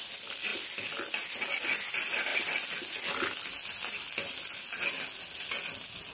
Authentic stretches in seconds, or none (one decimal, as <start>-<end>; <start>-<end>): 0.0-6.1